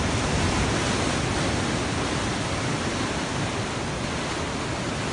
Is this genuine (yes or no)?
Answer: yes